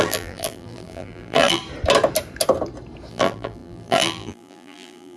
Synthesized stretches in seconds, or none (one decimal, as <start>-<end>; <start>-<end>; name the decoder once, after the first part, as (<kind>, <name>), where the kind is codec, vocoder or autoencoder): 0.0-1.6 (vocoder, BigVGAN v2); 3.1-5.2